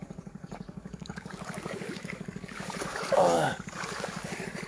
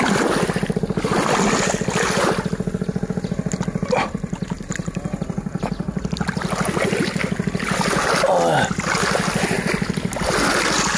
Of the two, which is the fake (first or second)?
first